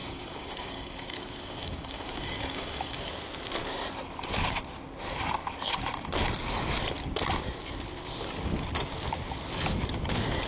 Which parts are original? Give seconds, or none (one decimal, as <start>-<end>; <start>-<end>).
3.1-10.5

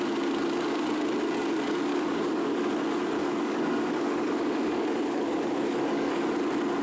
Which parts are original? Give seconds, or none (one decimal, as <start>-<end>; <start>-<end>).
0.0-1.9; 2.7-3.2; 6.3-6.8

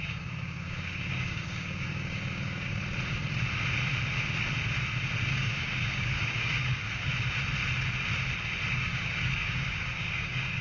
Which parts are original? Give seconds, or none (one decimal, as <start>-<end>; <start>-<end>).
2.8-5.2; 7.1-8.7

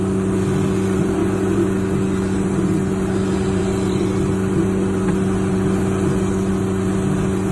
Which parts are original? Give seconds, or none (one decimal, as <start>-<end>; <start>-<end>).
0.0-7.5

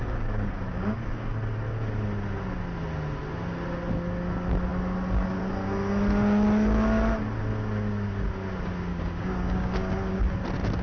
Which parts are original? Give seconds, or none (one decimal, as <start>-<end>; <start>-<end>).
1.3-8.9; 10.2-10.8